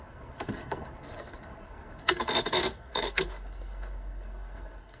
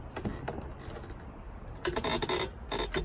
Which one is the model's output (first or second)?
first